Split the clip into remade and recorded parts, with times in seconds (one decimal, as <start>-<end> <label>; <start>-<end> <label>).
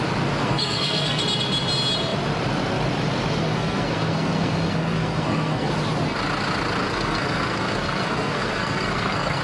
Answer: 0.0-0.4 recorded; 0.4-1.2 remade; 1.2-3.4 recorded; 3.4-5.7 remade; 5.7-6.8 recorded; 6.8-9.4 remade